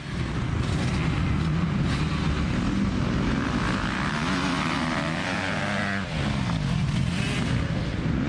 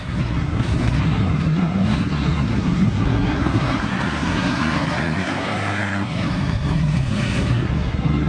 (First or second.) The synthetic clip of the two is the second